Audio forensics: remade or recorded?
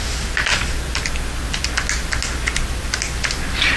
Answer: recorded